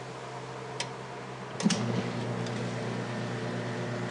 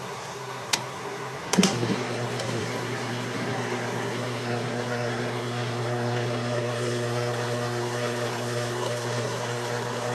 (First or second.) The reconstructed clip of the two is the second